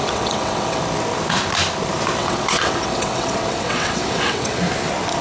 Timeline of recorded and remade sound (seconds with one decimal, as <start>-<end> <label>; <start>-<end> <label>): 0.0-0.8 remade; 0.8-2.2 recorded; 2.2-4.6 remade; 4.6-5.2 recorded